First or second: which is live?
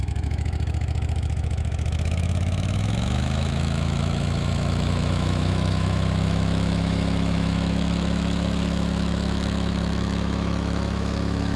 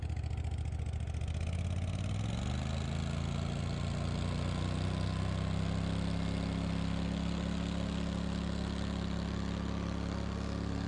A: second